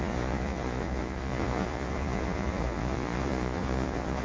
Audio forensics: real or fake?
fake